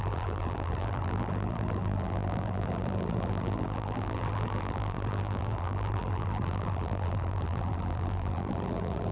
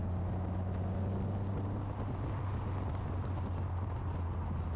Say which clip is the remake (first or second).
first